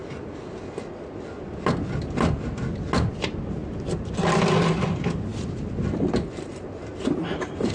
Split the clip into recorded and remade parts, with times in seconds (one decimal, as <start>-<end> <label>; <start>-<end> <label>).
0.0-3.1 recorded; 3.1-3.6 remade; 3.6-4.5 recorded; 4.5-5.3 remade; 5.3-6.5 recorded; 6.5-7.7 remade